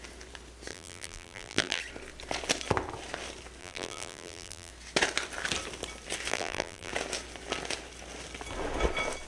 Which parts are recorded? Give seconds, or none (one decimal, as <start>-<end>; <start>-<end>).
0.0-0.7; 1.8-3.6; 4.7-6.3; 6.9-9.3